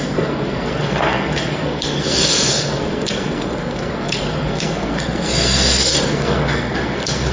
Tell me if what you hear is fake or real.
fake